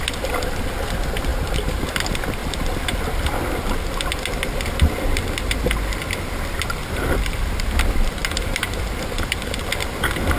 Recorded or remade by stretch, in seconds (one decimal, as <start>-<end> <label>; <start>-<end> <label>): 0.0-1.3 recorded; 1.3-1.8 remade; 1.8-8.2 recorded; 8.2-8.8 remade; 8.8-10.4 recorded